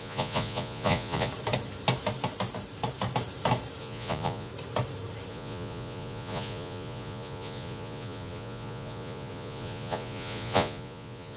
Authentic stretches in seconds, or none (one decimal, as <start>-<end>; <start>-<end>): 1.3-3.8; 4.5-5.3